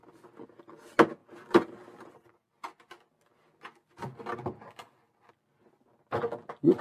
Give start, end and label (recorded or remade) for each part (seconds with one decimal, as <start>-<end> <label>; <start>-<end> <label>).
0.0-6.8 recorded